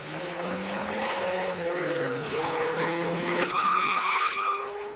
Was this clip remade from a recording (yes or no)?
yes